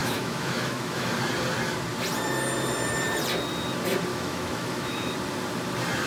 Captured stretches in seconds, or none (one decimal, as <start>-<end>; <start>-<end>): 1.2-4.1; 5.1-6.1